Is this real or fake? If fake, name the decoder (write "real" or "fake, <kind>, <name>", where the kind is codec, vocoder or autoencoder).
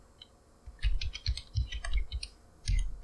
real